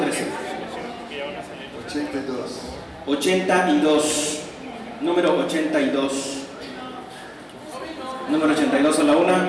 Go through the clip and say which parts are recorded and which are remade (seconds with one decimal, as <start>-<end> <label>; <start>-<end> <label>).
0.0-9.5 recorded